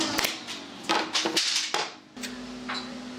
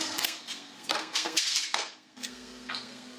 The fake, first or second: second